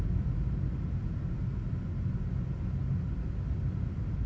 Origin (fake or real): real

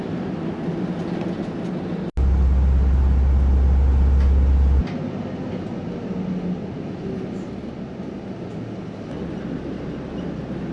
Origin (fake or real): real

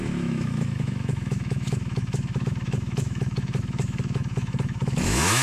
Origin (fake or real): fake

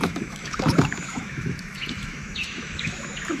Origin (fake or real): fake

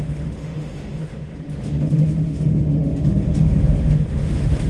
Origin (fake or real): fake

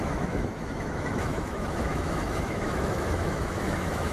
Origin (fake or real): fake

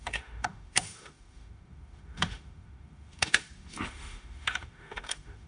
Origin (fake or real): fake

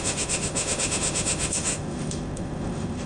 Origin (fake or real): fake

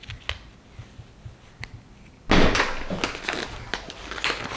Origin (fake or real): real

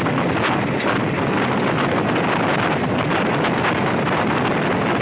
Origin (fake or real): real